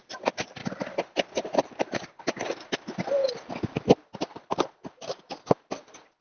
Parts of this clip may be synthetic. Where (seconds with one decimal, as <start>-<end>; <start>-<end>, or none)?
0.6-2.1

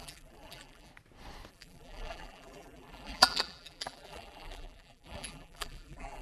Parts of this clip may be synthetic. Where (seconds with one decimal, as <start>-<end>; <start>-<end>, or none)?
0.0-0.9; 1.5-6.2

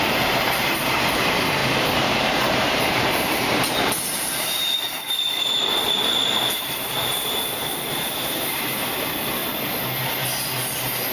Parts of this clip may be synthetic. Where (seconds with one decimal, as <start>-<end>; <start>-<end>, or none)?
0.0-9.4